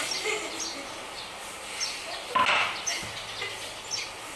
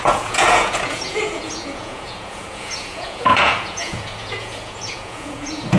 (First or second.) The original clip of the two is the first